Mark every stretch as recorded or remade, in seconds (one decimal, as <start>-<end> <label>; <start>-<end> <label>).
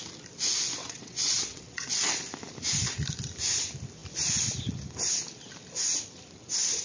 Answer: 0.0-0.8 recorded; 0.8-2.1 remade; 2.1-6.8 recorded